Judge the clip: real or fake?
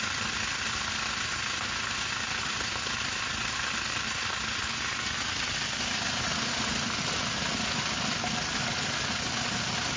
real